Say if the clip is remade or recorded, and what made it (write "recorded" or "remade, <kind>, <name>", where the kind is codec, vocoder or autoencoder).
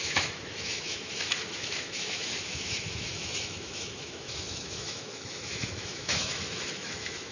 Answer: remade, autoencoder, DAC-VAE